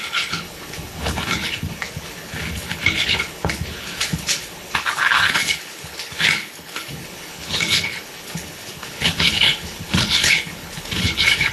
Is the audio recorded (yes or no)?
no